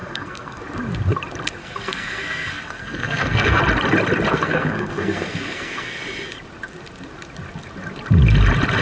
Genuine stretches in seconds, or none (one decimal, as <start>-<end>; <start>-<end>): 0.6-1.6; 3.6-4.3; 6.0-8.8